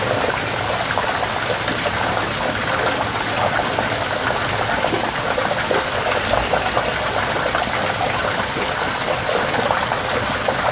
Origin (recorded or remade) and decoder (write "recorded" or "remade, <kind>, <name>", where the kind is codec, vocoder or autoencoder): recorded